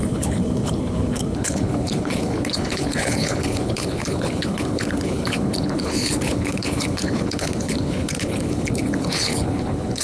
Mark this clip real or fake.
fake